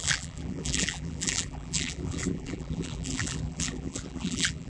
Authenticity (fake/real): fake